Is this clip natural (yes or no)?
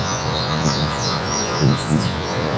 no